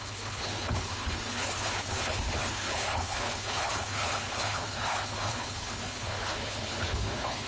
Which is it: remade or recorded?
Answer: remade